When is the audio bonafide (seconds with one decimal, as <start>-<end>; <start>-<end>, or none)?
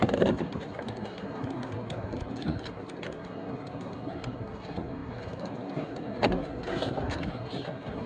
none